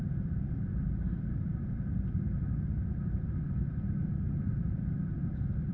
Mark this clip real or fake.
fake